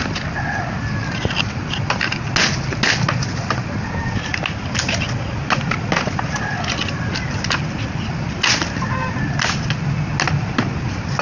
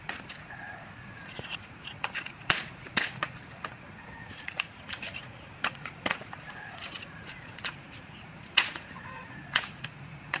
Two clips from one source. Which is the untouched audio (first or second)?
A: first